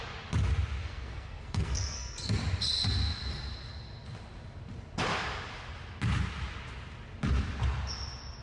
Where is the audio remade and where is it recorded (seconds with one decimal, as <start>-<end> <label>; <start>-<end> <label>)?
0.0-0.8 recorded; 0.8-2.3 remade; 2.3-8.4 recorded